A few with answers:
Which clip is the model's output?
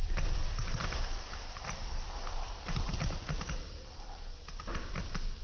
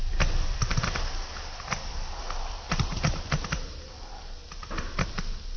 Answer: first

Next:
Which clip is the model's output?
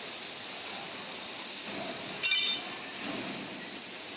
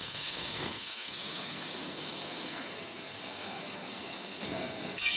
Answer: second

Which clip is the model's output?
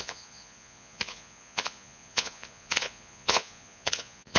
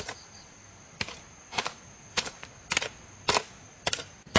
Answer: first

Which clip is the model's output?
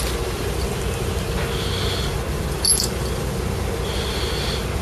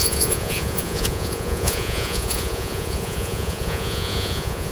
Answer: second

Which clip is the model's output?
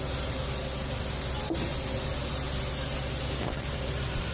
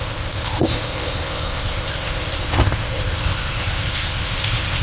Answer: second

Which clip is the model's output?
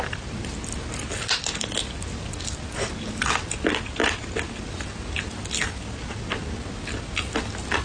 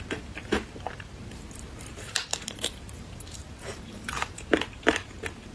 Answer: second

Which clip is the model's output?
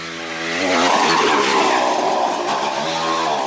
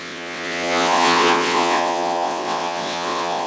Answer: second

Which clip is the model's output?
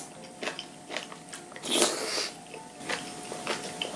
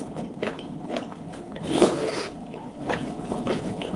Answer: second